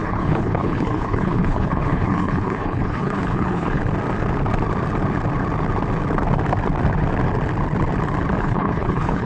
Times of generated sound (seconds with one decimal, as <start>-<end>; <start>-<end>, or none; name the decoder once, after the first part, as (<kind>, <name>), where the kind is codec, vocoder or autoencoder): 0.0-3.8 (codec, HILCodec); 8.4-9.3